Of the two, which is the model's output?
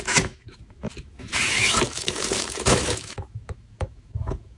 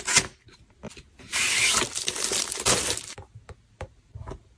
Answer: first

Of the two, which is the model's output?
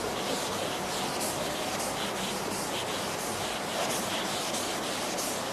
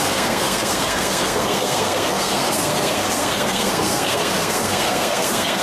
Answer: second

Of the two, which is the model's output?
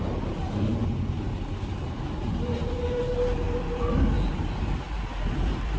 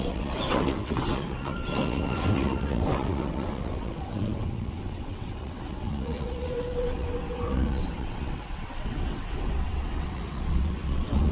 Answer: second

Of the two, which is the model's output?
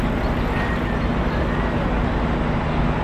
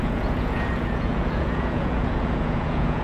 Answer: second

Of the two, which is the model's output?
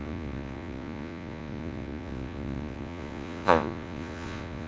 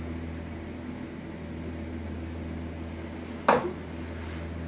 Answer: first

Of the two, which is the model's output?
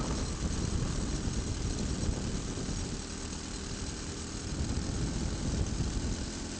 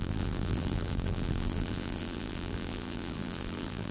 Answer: second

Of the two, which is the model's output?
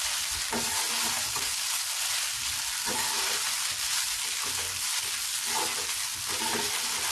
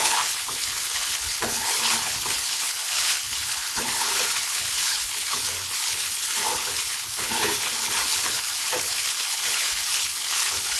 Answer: second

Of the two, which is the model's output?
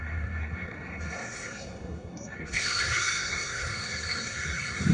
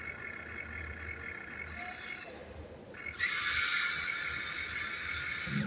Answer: first